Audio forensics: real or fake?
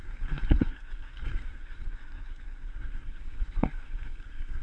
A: fake